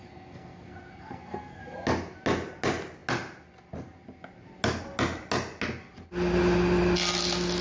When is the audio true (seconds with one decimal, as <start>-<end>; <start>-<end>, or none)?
1.6-7.6